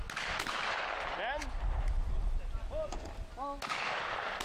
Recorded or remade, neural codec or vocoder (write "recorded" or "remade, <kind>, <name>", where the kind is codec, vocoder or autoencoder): recorded